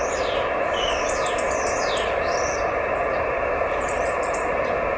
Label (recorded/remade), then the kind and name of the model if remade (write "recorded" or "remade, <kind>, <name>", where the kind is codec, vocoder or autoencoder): remade, vocoder, BigVGAN v2